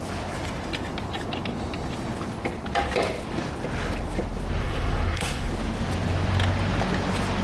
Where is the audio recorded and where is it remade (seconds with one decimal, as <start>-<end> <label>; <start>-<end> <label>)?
0.0-4.6 recorded; 4.6-5.5 remade; 5.5-7.4 recorded